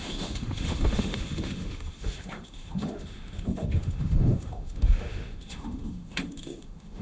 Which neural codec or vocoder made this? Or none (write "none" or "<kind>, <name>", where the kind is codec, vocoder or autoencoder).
autoencoder, DAC-VAE